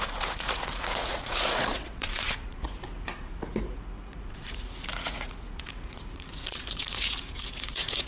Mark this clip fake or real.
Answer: fake